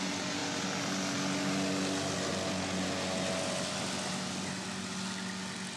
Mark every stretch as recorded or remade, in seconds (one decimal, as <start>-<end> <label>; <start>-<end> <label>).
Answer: 0.0-5.8 recorded